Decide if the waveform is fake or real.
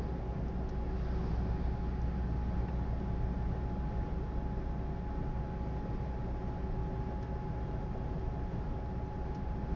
real